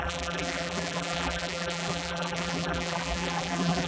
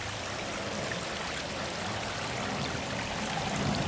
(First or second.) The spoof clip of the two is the first